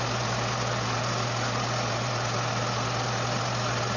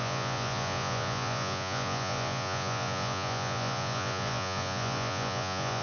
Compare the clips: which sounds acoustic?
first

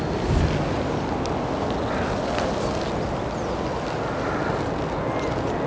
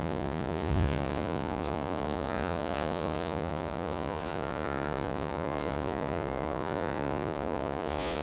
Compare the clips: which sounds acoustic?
first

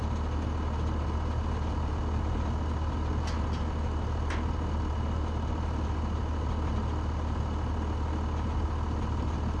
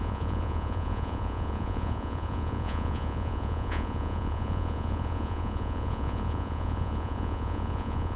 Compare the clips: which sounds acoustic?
first